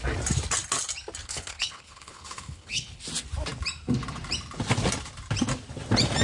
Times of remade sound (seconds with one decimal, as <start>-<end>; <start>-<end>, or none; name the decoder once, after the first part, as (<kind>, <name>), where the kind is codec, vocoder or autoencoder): 1.2-3.0 (codec, HILCodec)